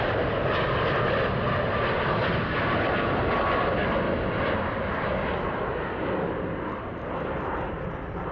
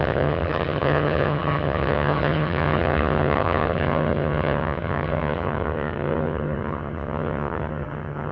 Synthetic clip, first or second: second